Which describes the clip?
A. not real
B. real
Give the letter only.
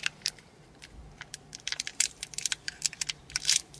A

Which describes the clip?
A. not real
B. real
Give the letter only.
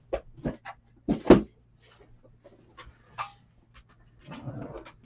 B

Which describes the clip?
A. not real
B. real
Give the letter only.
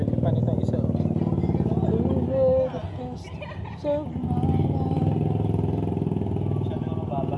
B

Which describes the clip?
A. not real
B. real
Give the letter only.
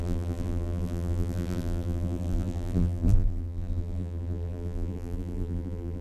A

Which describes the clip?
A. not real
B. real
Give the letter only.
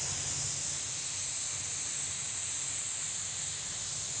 B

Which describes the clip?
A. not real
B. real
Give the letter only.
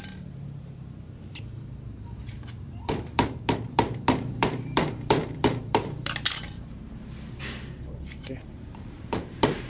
A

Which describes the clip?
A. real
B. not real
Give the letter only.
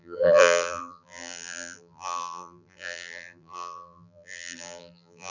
B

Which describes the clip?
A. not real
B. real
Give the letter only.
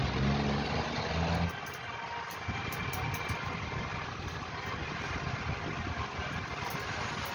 B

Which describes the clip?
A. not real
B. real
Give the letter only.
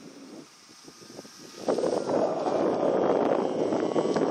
B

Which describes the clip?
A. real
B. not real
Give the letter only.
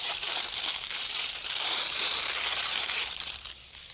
B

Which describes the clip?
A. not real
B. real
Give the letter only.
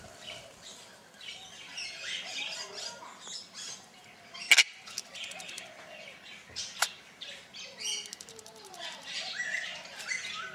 B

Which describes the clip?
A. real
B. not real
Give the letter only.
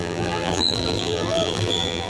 B